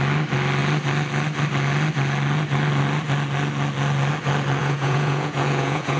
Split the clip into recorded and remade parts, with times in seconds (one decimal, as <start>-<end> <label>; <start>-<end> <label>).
0.0-4.6 recorded; 4.6-6.0 remade

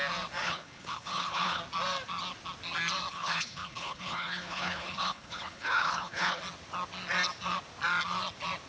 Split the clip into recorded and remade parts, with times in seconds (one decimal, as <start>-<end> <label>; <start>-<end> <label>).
0.0-0.4 recorded; 0.4-1.6 remade; 1.6-3.1 recorded; 3.1-6.4 remade; 6.4-8.7 recorded

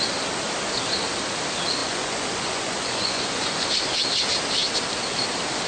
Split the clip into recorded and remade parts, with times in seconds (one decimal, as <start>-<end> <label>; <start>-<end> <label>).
0.0-1.8 recorded; 1.8-3.7 remade; 3.7-5.7 recorded

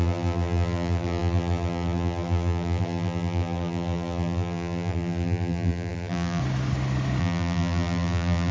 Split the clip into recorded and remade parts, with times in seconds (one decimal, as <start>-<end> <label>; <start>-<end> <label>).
0.0-6.4 remade; 6.4-7.2 recorded; 7.2-8.5 remade

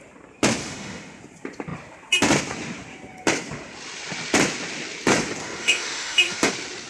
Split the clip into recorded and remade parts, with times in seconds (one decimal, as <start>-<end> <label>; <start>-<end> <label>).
0.0-0.6 recorded; 0.6-1.2 remade; 1.2-5.4 recorded; 5.4-6.5 remade; 6.5-6.9 recorded

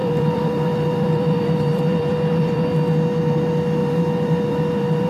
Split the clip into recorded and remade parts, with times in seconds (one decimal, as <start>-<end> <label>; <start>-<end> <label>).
0.0-2.7 remade; 2.7-3.8 recorded; 3.8-5.1 remade